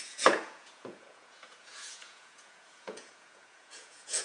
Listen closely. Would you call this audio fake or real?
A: fake